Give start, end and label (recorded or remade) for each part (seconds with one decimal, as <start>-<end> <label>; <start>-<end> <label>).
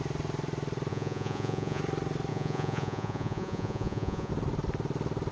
0.0-0.9 recorded; 0.9-1.8 remade; 1.8-2.3 recorded; 2.3-4.3 remade; 4.3-5.3 recorded